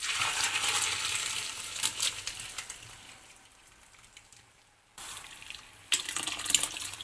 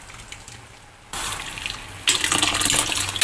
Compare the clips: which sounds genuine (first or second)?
second